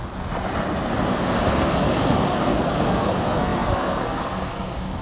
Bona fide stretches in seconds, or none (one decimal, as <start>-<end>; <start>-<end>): 0.0-1.5